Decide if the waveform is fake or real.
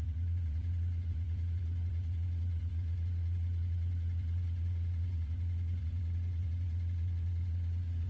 fake